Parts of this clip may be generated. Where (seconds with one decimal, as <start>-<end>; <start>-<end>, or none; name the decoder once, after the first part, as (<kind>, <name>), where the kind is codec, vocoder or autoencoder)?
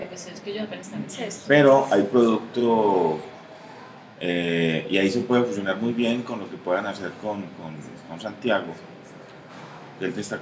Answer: 1.1-2.6 (autoencoder, DAC-VAE); 3.8-5.2; 9.5-10.4